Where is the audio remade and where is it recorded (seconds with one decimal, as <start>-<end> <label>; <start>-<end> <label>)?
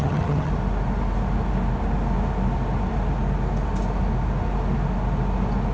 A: 0.0-0.5 remade; 0.5-5.7 recorded